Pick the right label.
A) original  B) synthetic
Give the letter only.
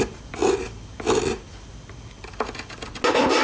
A